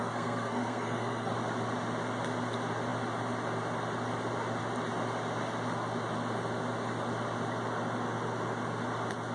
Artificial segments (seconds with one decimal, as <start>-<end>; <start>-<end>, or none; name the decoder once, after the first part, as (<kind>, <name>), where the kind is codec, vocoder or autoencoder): 0.0-1.3 (codec, SNAC)